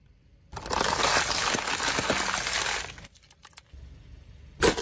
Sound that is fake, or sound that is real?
real